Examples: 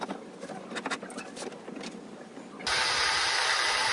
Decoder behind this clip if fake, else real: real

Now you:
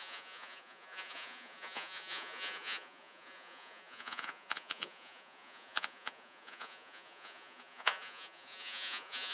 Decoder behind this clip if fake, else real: fake, vocoder, Vocos